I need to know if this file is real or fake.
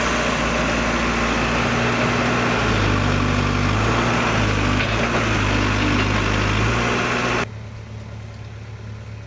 real